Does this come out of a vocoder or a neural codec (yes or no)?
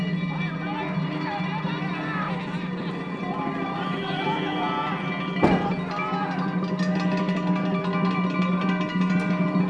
no